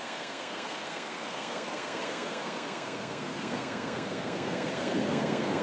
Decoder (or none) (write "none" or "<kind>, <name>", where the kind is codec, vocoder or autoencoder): codec, SNAC